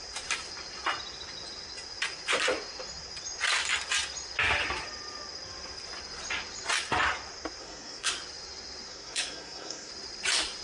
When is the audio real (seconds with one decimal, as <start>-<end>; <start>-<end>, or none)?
0.0-7.6; 8.1-8.9; 9.9-10.6